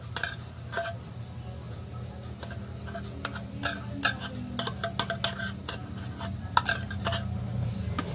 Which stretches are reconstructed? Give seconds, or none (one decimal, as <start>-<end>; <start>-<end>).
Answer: 2.8-3.5